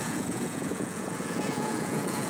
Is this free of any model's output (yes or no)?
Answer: no